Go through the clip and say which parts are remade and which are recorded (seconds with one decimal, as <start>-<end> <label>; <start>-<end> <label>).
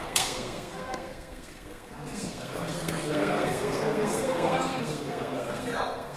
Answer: 0.0-6.2 remade